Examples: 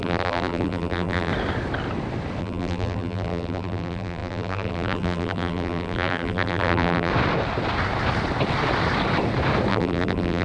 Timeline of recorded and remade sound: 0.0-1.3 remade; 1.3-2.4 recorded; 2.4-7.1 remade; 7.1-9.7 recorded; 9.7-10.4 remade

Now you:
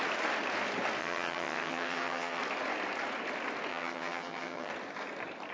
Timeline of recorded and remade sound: 0.0-1.0 recorded; 1.0-2.4 remade; 2.4-3.7 recorded; 3.7-4.7 remade; 4.7-5.5 recorded

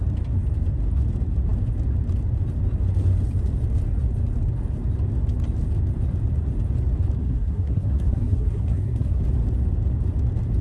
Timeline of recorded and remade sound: 0.0-7.2 recorded; 7.2-9.2 remade; 9.2-10.6 recorded

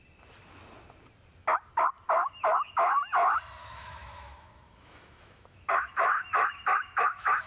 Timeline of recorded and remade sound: 0.0-2.2 recorded; 2.2-3.0 remade; 3.0-3.6 recorded; 3.6-7.5 remade

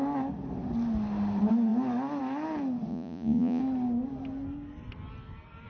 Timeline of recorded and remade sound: 0.0-2.9 recorded; 2.9-3.6 remade; 3.6-5.7 recorded

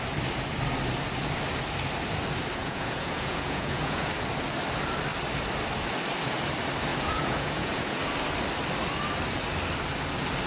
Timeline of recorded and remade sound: 0.0-2.6 recorded; 2.6-4.1 remade; 4.1-6.9 recorded; 6.9-8.0 remade; 8.0-10.5 recorded

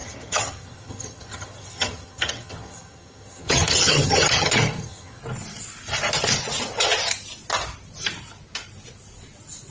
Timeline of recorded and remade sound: 0.0-5.2 remade; 5.2-9.7 recorded